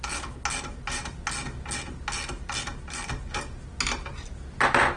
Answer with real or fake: real